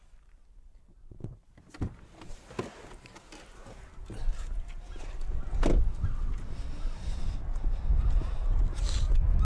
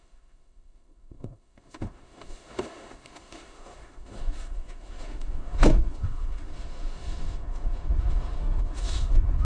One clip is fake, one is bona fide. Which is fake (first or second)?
second